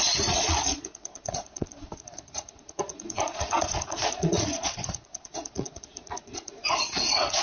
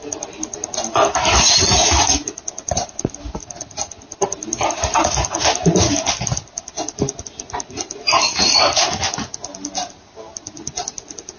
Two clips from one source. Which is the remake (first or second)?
first